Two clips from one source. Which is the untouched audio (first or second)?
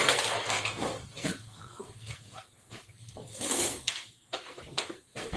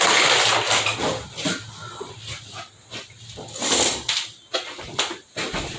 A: second